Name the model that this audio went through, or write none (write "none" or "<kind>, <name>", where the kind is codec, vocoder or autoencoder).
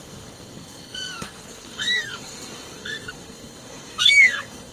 codec, SNAC